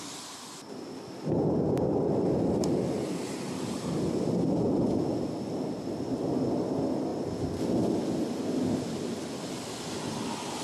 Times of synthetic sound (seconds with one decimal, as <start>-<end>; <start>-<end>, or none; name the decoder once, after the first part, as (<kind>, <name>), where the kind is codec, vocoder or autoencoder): 7.1-7.6 (vocoder, BigVGAN v2)